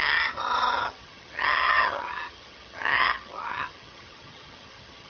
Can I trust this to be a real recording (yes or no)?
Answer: no